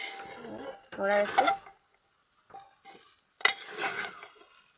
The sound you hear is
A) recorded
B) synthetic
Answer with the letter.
A